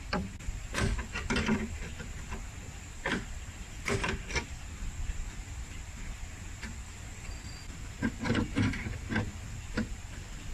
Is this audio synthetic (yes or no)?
yes